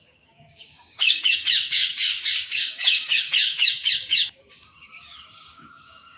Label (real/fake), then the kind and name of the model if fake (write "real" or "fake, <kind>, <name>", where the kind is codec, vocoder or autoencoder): fake, codec, DAC